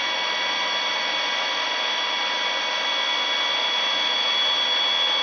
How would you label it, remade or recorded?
recorded